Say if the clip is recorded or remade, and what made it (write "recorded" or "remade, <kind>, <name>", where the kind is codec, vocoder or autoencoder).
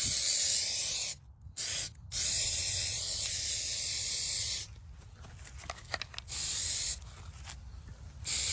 recorded